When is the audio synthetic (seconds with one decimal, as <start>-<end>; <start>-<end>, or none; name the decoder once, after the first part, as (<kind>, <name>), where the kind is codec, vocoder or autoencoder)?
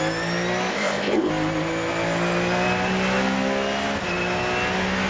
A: 0.7-1.3 (codec, ZipCodec)